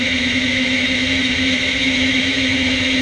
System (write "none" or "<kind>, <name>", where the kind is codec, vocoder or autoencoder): autoencoder, DAC-VAE